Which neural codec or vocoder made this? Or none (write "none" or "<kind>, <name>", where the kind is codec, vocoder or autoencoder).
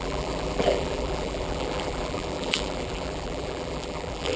vocoder, BigVGAN v2